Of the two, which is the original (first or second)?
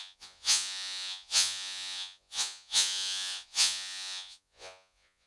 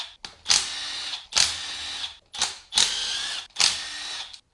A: second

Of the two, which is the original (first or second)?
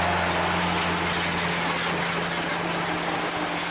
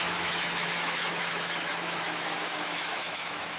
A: first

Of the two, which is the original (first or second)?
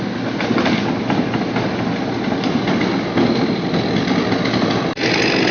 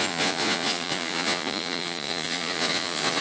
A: first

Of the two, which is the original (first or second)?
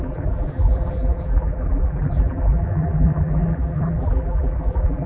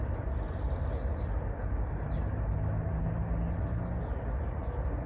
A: second